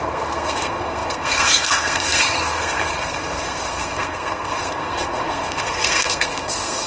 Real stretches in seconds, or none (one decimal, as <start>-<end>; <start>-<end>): none